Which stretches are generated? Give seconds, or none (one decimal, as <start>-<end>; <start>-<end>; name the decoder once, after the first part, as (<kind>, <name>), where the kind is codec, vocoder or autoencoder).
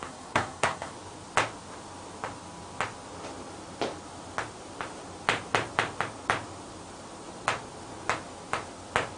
0.0-0.9 (codec, SNAC)